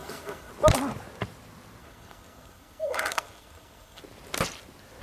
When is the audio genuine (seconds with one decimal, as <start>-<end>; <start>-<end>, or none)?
0.5-1.8; 4.0-5.0